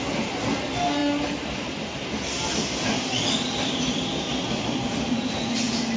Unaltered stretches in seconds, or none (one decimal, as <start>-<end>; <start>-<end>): 0.0-6.0